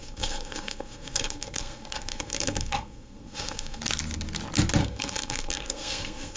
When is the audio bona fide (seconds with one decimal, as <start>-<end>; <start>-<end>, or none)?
3.8-4.8